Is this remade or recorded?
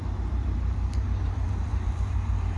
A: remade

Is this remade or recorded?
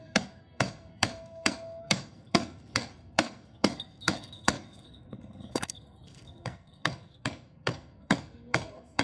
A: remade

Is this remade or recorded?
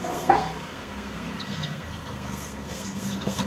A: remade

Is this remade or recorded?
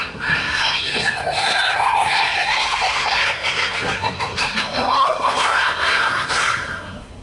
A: remade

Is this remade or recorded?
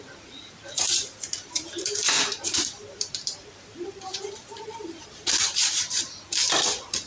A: remade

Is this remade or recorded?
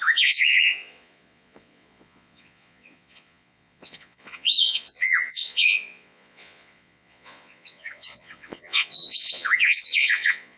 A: remade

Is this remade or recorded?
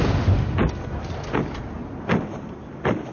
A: recorded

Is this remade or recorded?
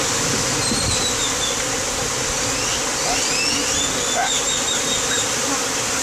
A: recorded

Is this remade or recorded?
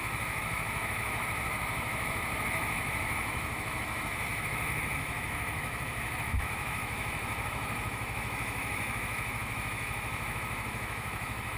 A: remade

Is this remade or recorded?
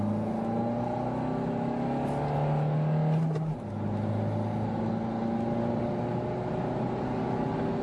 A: recorded